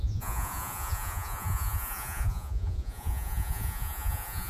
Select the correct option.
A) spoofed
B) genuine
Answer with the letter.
A